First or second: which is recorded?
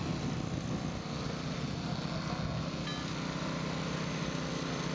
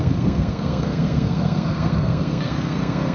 first